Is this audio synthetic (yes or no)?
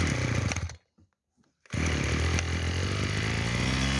no